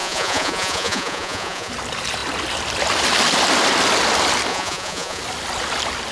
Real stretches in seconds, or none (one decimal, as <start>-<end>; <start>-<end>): 1.7-4.5; 5.2-6.1